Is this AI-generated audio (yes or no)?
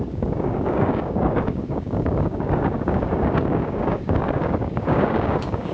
yes